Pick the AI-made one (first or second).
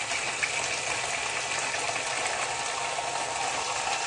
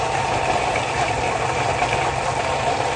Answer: second